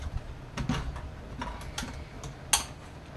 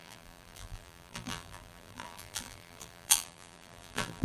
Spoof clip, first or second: second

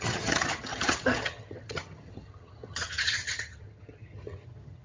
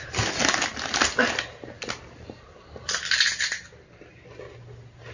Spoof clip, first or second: first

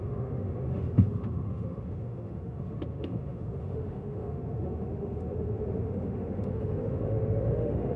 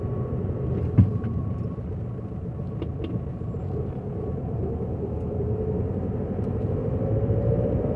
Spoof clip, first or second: first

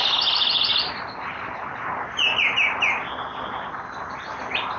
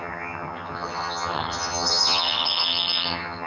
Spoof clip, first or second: second